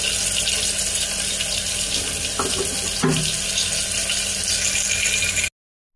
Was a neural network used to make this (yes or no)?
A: no